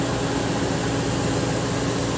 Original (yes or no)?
yes